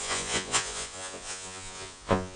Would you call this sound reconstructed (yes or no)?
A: yes